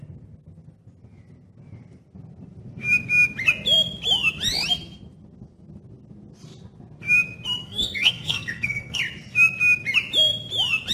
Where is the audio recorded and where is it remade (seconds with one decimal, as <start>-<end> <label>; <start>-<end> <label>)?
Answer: 0.0-7.6 recorded; 7.6-9.0 remade; 9.0-10.9 recorded